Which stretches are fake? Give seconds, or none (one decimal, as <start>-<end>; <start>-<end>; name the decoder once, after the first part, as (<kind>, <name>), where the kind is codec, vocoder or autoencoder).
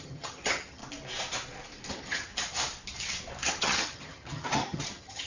0.0-0.8 (vocoder, HiFi-GAN); 1.9-2.3; 3.5-5.3